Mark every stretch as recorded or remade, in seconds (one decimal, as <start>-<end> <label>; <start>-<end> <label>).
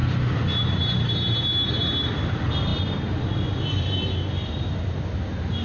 0.0-5.6 recorded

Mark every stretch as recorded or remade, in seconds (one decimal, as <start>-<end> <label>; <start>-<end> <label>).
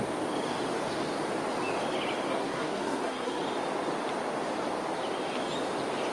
0.0-2.3 recorded; 2.3-3.4 remade; 3.4-6.1 recorded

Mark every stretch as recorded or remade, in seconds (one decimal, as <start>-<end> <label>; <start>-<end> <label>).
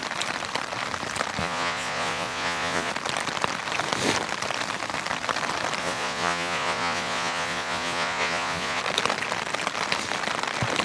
0.0-1.4 recorded; 1.4-2.9 remade; 2.9-5.8 recorded; 5.8-8.8 remade; 8.8-10.8 recorded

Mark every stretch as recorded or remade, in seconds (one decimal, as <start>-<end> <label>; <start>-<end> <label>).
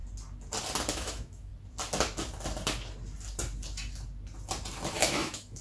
0.0-0.9 recorded; 0.9-1.5 remade; 1.5-4.9 recorded; 4.9-5.6 remade